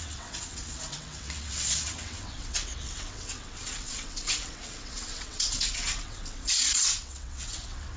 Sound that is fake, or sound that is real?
fake